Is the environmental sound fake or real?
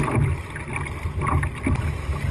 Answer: real